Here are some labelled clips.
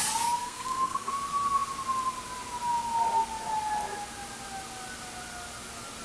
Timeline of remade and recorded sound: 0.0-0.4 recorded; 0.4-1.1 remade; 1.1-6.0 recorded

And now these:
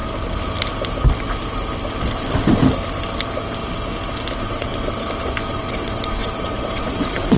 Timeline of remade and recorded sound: 0.0-4.4 recorded; 4.4-5.0 remade; 5.0-5.5 recorded; 5.5-7.4 remade

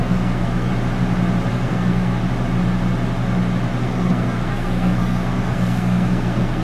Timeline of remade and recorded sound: 0.0-0.7 remade; 0.7-1.5 recorded; 1.5-2.2 remade; 2.2-3.8 recorded; 3.8-6.6 remade

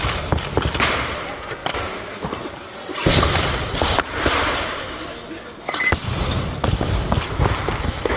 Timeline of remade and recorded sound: 0.0-6.7 remade; 6.7-8.2 recorded

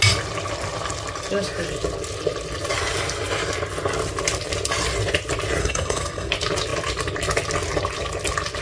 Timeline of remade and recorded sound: 0.0-5.6 recorded; 5.6-6.3 remade; 6.3-8.6 recorded

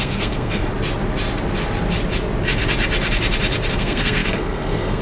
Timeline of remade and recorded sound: 0.0-0.7 remade; 0.7-3.7 recorded; 3.7-5.0 remade